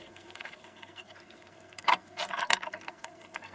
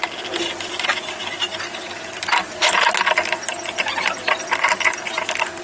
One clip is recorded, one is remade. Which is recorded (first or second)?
second